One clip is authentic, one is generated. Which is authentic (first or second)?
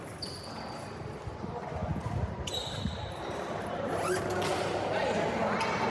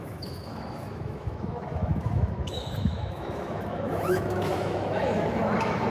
first